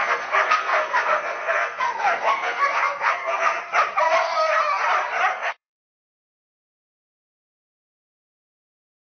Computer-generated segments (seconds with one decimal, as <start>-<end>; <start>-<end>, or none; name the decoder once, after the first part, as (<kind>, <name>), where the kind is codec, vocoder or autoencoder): 0.0-3.6 (codec, SNAC); 5.3-6.0